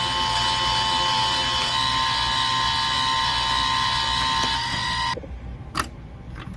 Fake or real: real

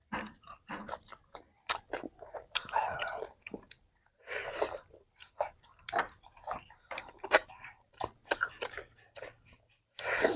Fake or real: fake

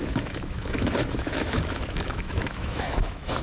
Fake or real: fake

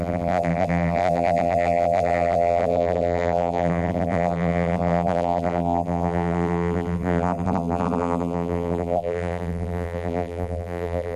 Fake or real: fake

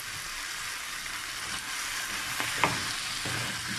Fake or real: real